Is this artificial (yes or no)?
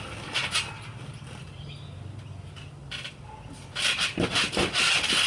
no